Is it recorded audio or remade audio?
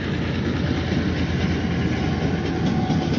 recorded